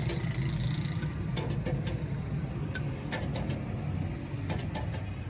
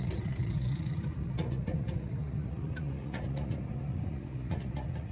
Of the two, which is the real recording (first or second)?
first